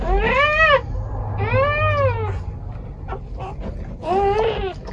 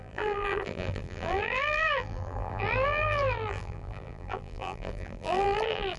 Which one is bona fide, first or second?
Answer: first